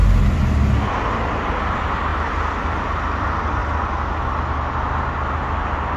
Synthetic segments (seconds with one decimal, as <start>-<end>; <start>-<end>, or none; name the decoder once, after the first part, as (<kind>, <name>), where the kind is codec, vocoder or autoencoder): none